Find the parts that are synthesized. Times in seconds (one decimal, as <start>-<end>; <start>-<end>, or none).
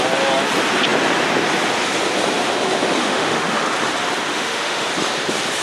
3.0-3.6; 4.3-4.9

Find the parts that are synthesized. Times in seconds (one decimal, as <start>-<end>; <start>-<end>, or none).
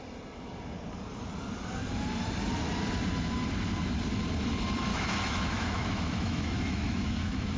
4.9-7.6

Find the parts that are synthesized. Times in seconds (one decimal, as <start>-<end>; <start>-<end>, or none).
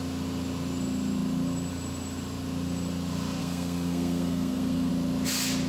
3.4-4.9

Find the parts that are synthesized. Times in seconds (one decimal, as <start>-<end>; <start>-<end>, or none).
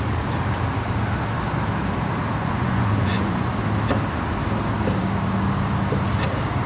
2.4-3.5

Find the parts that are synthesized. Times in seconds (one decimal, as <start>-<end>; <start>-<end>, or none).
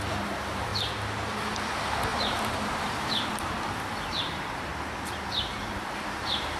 0.0-0.7; 1.7-4.7; 5.3-6.6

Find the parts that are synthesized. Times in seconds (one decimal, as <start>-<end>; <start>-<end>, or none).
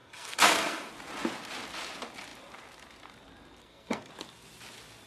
0.0-0.9; 3.6-4.1